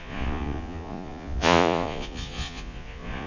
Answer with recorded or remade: remade